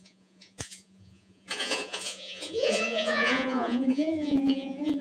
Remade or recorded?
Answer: remade